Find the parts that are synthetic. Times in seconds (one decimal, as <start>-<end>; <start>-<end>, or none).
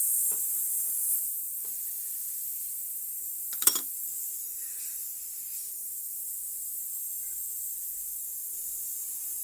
0.0-5.6; 6.2-8.3